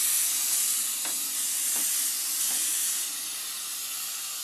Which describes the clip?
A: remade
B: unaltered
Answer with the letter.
B